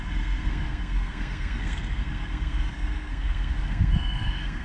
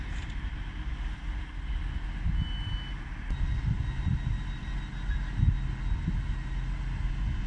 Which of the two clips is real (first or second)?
second